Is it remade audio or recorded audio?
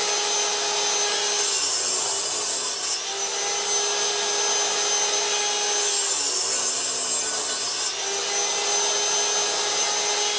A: recorded